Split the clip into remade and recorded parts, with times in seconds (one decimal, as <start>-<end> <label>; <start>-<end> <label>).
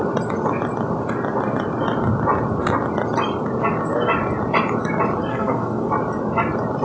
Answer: 0.0-5.3 recorded; 5.3-5.9 remade; 5.9-6.8 recorded